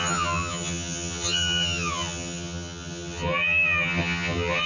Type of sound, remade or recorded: remade